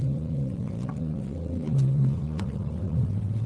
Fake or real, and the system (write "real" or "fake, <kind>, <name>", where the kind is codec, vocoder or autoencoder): fake, vocoder, WaveNeXt